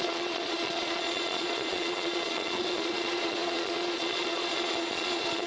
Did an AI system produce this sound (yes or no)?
yes